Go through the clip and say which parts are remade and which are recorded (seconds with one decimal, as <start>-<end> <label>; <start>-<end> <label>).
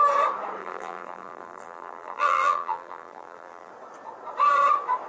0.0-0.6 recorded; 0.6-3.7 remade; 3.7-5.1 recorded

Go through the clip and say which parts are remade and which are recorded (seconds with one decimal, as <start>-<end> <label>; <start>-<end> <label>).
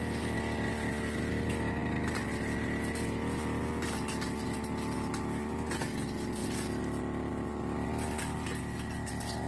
0.0-9.5 recorded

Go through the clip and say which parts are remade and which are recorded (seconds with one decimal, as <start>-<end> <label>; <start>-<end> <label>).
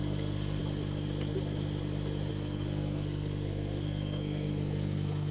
0.0-0.6 remade; 0.6-2.3 recorded; 2.3-5.3 remade